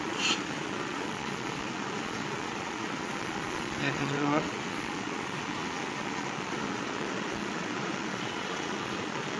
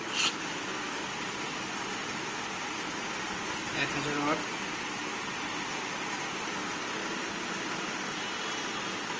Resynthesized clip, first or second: first